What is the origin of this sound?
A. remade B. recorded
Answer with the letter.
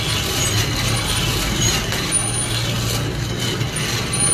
B